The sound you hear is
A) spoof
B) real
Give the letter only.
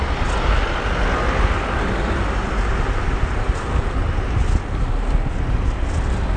B